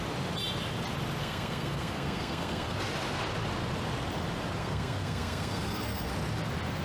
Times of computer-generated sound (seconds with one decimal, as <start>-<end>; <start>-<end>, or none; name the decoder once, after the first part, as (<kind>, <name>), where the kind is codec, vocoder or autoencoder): 1.2-2.9 (codec, SNAC); 4.6-6.1